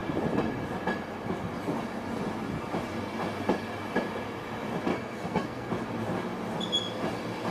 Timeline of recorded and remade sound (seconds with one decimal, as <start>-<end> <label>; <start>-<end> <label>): 0.0-4.9 recorded; 4.9-5.7 remade; 5.7-7.5 recorded